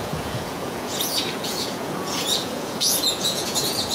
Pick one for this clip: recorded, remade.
remade